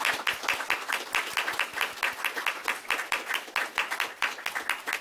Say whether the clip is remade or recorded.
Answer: recorded